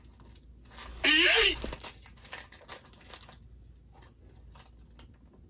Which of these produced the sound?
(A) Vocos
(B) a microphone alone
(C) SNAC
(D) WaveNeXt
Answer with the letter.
B